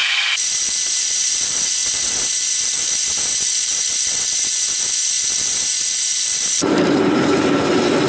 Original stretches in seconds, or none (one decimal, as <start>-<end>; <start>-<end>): 1.8-2.6; 4.1-5.5